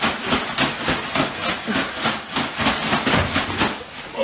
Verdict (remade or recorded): recorded